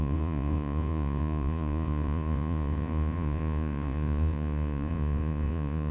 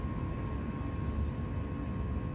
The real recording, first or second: second